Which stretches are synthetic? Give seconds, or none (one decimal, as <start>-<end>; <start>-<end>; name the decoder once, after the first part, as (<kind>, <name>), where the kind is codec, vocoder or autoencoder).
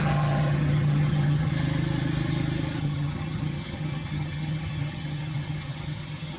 0.0-1.5 (vocoder, HiFi-GAN); 2.8-6.4